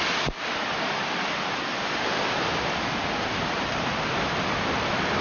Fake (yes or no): no